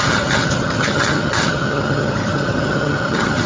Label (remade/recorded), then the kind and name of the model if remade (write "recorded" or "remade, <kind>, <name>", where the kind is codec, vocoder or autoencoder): remade, vocoder, HiFi-GAN